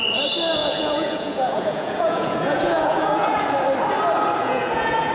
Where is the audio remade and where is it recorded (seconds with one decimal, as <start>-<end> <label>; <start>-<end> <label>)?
0.0-0.6 recorded; 0.6-3.5 remade; 3.5-4.4 recorded; 4.4-5.1 remade